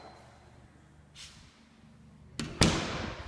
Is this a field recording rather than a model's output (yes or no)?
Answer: yes